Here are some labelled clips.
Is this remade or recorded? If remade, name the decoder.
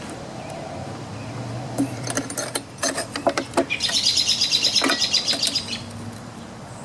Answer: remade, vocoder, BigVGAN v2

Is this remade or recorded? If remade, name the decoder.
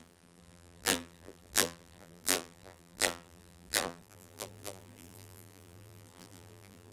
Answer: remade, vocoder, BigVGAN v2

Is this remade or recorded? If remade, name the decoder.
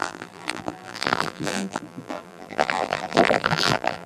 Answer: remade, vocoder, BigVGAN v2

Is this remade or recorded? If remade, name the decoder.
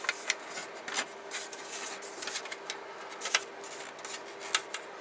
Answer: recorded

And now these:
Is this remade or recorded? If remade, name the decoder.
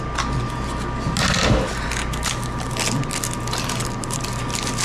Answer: recorded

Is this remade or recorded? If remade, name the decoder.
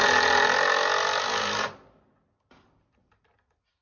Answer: recorded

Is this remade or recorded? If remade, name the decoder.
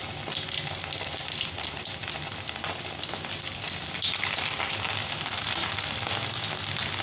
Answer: remade, vocoder, BigVGAN v2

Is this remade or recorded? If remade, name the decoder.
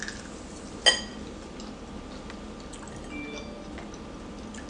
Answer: recorded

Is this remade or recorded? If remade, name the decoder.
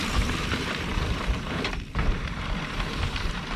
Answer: remade, vocoder, BigVGAN v2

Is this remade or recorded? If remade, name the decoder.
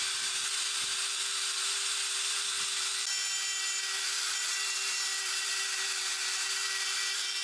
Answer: remade, vocoder, BigVGAN v2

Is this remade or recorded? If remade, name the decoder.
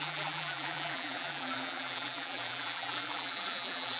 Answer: remade, vocoder, BigVGAN v2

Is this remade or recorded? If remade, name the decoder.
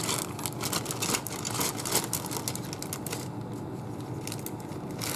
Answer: recorded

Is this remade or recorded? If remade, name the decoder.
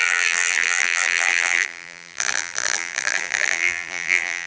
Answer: remade, vocoder, BigVGAN v2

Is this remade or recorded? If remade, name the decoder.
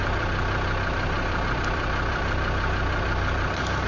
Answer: remade, vocoder, BigVGAN v2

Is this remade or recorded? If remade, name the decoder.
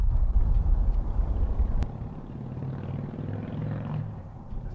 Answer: remade, vocoder, BigVGAN v2